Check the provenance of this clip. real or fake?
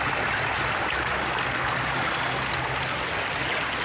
real